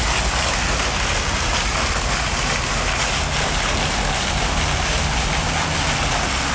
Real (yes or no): yes